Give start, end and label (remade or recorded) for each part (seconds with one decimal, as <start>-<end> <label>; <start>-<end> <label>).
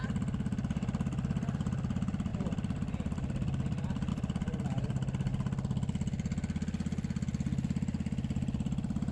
0.0-5.3 remade; 5.3-9.1 recorded